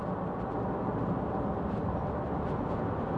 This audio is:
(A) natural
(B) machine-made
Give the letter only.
A